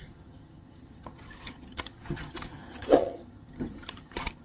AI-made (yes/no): yes